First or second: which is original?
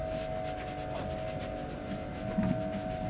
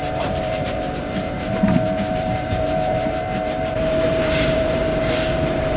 first